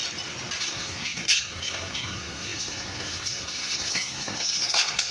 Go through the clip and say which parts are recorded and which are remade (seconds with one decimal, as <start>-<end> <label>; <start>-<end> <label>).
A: 0.0-0.6 recorded; 0.6-5.1 remade